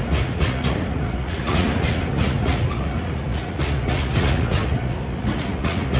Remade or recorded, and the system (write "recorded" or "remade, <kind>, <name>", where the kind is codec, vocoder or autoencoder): remade, vocoder, Vocos